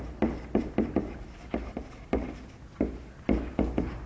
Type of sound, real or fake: real